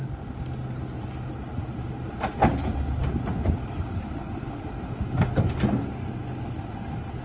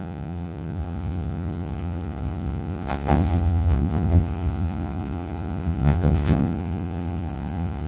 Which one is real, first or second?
first